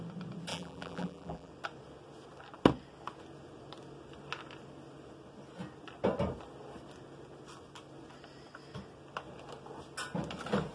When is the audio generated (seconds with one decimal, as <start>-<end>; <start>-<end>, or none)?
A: 0.5-1.5